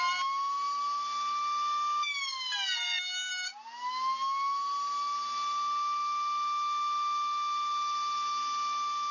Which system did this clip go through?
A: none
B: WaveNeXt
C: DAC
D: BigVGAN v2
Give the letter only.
A